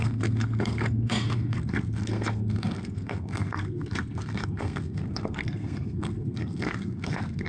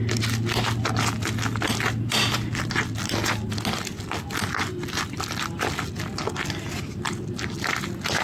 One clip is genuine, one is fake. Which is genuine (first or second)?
second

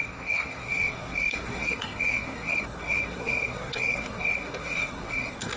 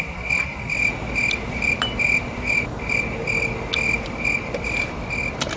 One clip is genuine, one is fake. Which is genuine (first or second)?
second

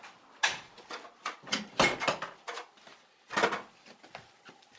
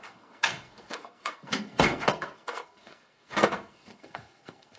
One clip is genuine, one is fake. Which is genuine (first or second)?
first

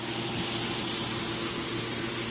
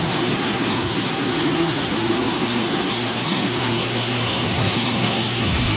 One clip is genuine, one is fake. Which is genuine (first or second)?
first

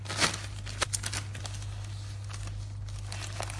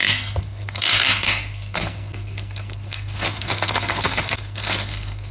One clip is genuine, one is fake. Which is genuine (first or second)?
first